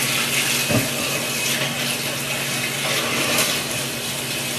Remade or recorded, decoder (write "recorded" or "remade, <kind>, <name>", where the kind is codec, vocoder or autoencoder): recorded